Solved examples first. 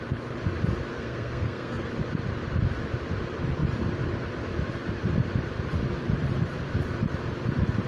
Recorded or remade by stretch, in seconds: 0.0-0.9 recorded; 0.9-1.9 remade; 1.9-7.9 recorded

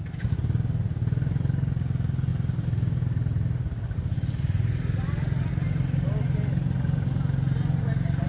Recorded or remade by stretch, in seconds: 0.0-8.3 recorded

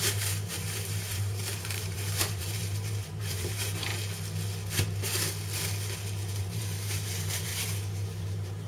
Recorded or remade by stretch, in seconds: 0.0-3.9 remade; 3.9-6.3 recorded; 6.3-7.5 remade; 7.5-8.2 recorded; 8.2-8.7 remade

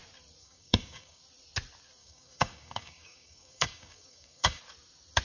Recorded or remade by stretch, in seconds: 0.0-0.4 recorded; 0.4-1.2 remade; 1.2-2.0 recorded; 2.0-4.6 remade; 4.6-5.2 recorded